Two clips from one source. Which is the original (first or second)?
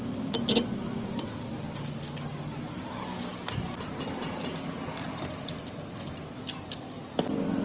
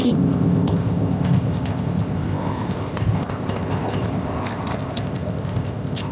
first